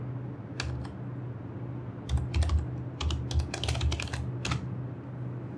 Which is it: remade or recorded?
recorded